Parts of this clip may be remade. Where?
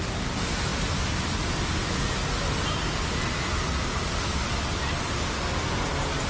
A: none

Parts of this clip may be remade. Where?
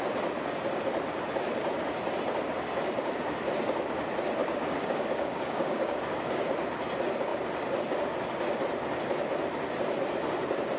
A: 4.4-6.5 (codec, DAC)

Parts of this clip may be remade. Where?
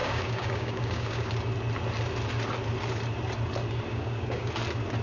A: 0.0-1.3 (codec, DAC); 3.9-4.5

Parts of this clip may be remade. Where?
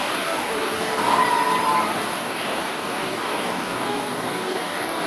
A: 0.0-1.2 (codec, DAC); 2.0-5.1